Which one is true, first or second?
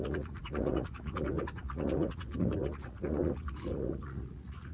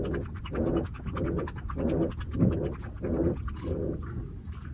second